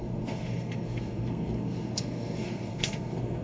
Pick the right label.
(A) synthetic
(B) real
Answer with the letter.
A